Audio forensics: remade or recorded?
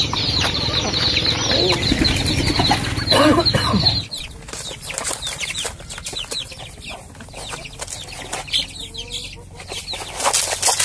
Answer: recorded